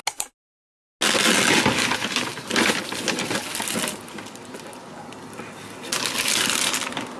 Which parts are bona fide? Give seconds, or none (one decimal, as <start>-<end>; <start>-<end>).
0.0-7.2